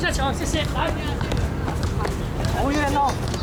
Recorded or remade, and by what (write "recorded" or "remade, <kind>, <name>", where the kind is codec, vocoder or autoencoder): recorded